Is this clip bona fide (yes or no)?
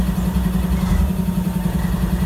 yes